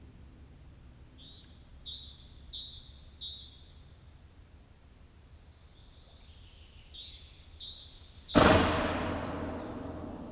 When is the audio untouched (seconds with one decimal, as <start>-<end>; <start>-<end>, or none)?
0.0-1.7; 2.9-5.8; 9.1-10.3